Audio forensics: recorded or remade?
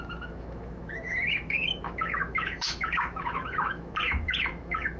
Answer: remade